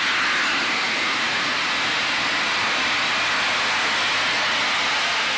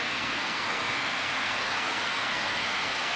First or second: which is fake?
second